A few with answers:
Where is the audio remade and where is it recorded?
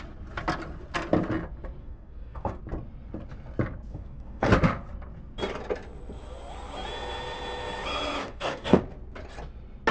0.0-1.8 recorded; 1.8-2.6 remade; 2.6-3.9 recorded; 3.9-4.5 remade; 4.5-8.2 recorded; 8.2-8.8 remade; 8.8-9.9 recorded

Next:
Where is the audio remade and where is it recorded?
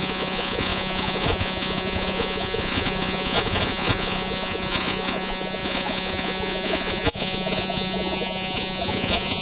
0.0-9.4 remade